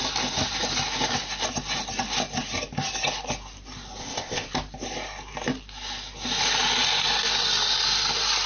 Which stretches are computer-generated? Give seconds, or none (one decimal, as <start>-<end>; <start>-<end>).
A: 4.0-4.5